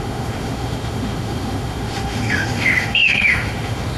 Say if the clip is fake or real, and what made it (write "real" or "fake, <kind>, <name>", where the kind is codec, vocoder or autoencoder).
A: fake, autoencoder, DAC-VAE